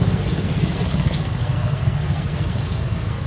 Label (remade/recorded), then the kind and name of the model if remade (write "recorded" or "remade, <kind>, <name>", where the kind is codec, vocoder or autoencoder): remade, codec, SNAC